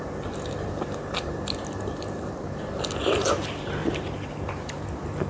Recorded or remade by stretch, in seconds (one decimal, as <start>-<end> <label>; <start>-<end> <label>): 0.0-5.3 recorded

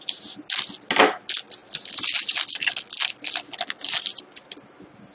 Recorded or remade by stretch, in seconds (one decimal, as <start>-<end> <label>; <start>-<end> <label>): 0.0-5.1 recorded